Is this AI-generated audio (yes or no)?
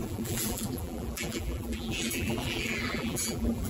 yes